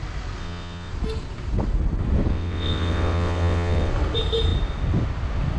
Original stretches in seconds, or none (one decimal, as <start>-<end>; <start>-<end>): 0.0-0.4; 0.9-2.3; 3.9-5.6